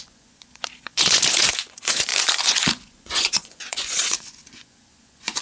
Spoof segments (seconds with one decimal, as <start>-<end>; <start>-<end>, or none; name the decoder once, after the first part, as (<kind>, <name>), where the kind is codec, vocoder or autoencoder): 0.0-5.4 (vocoder, Vocos)